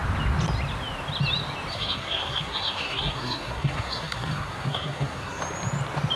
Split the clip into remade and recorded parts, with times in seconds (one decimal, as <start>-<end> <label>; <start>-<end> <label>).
0.0-1.7 recorded; 1.7-5.4 remade; 5.4-6.2 recorded